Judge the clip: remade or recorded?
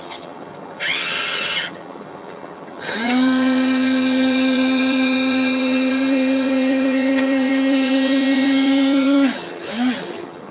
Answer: remade